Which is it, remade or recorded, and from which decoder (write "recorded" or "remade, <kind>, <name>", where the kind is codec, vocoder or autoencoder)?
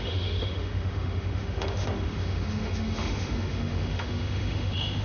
remade, autoencoder, DAC-VAE